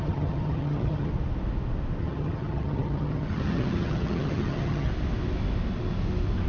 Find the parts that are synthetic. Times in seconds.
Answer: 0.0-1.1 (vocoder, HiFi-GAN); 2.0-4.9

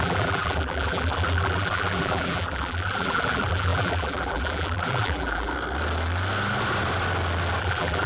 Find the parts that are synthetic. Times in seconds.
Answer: 0.0-5.5 (vocoder, BigVGAN v2); 7.6-8.1